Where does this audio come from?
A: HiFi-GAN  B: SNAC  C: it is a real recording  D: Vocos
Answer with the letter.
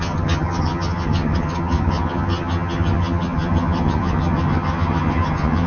A